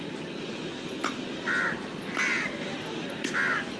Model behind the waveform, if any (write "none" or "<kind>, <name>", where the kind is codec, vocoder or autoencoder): none